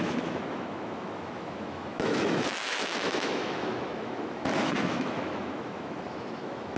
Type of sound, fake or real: fake